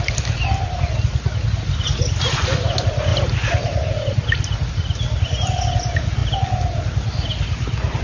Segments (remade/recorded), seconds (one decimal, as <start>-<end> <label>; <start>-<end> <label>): 0.0-8.0 recorded